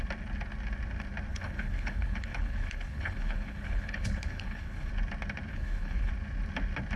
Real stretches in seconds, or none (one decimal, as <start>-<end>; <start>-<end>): 0.0-1.3; 4.9-5.5; 6.1-7.0